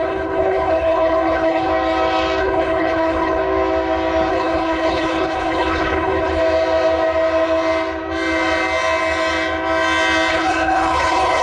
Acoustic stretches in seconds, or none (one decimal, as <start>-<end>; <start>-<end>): 1.7-2.4; 3.4-4.3; 6.4-10.3